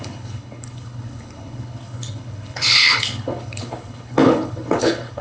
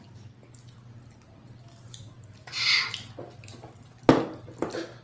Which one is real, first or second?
second